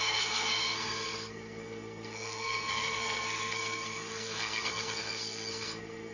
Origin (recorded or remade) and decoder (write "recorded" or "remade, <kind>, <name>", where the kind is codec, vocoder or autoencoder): remade, codec, SNAC